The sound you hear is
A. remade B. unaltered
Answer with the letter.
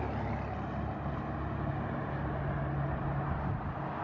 B